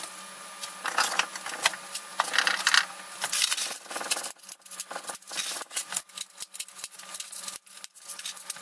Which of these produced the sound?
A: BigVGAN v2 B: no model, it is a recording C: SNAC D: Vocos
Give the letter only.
B